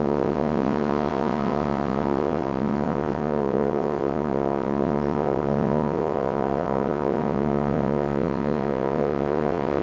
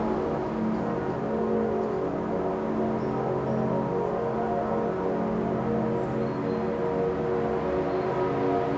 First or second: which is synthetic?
first